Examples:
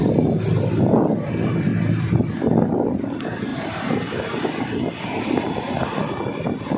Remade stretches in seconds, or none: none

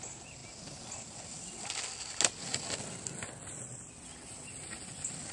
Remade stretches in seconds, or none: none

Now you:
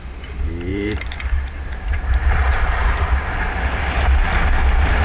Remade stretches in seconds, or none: 0.7-3.3 (vocoder, BigVGAN v2)

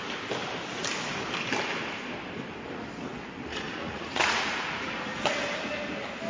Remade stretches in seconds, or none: 3.5-5.3 (vocoder, Vocos)